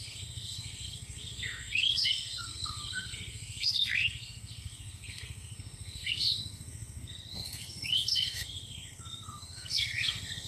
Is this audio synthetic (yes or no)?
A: yes